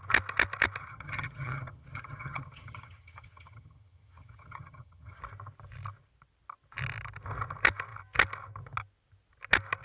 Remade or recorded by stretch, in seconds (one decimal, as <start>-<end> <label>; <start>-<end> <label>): 0.0-0.8 recorded; 0.8-5.2 remade; 5.2-9.8 recorded